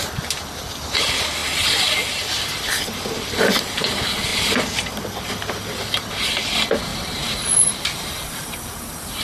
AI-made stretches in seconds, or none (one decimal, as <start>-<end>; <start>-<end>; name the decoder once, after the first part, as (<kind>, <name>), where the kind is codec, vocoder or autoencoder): 6.9-9.2 (vocoder, BigVGAN v2)